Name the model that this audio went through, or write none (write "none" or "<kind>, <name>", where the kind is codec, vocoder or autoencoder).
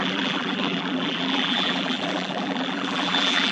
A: vocoder, BigVGAN v2